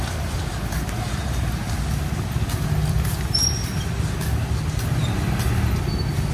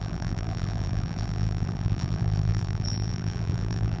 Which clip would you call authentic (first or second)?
first